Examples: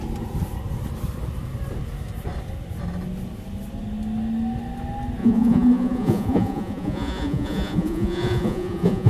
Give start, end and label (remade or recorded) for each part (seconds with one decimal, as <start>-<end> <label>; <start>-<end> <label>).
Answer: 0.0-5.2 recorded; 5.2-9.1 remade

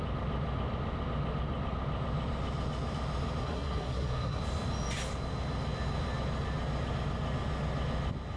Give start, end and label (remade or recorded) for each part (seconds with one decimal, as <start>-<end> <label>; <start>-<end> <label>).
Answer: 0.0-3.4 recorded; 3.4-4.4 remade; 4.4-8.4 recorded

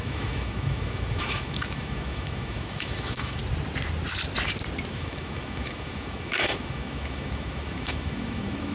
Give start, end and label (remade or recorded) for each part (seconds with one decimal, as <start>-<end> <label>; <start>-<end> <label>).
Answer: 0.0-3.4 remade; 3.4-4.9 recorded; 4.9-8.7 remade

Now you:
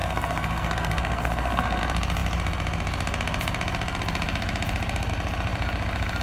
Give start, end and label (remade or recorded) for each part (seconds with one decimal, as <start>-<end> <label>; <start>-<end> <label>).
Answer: 0.0-1.8 remade; 1.8-6.2 recorded

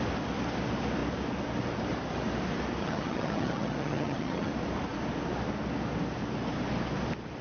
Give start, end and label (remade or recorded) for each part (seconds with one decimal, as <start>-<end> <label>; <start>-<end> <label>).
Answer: 0.0-2.8 recorded; 2.8-4.5 remade; 4.5-7.4 recorded

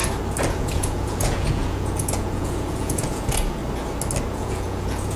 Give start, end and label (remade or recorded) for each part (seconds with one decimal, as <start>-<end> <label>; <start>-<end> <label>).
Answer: 0.0-0.5 recorded; 0.5-3.6 remade; 3.6-4.3 recorded; 4.3-5.2 remade